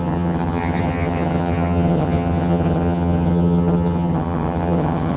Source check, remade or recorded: remade